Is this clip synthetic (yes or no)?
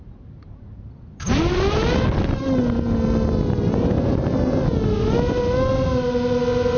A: no